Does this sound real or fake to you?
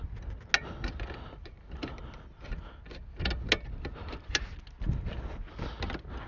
real